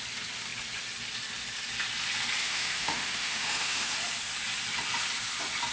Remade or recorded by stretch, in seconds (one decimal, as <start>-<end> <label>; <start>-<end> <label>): 0.0-2.4 recorded; 2.4-3.9 remade; 3.9-5.7 recorded